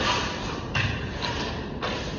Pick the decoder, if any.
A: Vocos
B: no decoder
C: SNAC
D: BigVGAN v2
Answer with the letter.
B